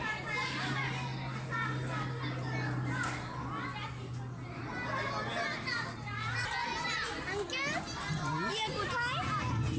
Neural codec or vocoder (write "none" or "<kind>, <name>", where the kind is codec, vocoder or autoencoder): none